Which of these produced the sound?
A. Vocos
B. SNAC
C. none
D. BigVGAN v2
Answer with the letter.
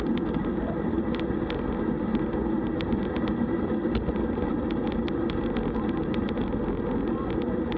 C